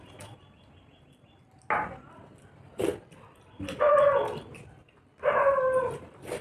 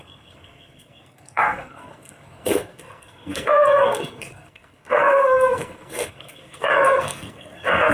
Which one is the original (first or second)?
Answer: first